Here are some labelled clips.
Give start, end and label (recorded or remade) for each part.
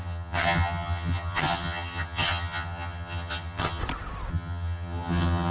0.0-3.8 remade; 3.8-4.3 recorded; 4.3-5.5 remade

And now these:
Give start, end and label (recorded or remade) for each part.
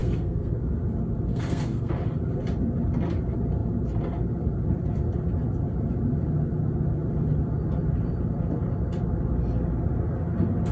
0.0-0.7 remade; 0.7-1.3 recorded; 1.3-1.9 remade; 1.9-10.7 recorded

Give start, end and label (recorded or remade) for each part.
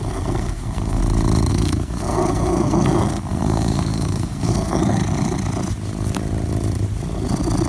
0.0-1.0 remade; 1.0-1.5 recorded; 1.5-5.0 remade; 5.0-7.7 recorded